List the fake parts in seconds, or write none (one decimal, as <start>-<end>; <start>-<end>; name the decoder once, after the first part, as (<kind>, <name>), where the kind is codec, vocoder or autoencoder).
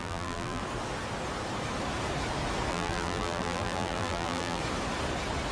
0.0-0.6 (vocoder, BigVGAN v2); 2.7-4.6